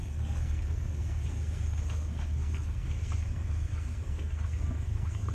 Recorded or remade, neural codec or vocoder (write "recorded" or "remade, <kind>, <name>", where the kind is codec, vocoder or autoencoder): remade, codec, SNAC